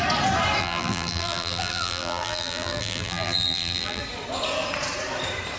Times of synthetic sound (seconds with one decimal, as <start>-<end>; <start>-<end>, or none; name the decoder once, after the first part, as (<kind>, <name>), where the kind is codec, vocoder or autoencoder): 0.6-4.0 (vocoder, BigVGAN v2)